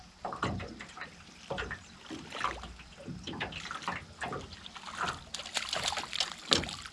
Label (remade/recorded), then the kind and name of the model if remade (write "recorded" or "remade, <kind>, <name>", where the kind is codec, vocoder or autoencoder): recorded